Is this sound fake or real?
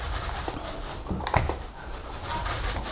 real